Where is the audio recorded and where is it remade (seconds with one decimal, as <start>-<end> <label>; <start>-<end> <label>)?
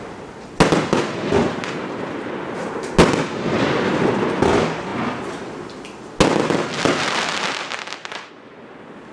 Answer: 0.0-9.1 recorded